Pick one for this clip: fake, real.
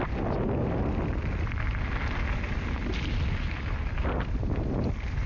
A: real